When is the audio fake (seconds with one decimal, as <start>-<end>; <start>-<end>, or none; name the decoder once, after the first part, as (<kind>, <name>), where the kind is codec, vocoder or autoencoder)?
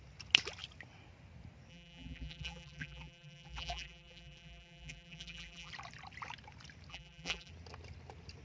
1.7-5.7 (vocoder, BigVGAN v2); 6.9-7.5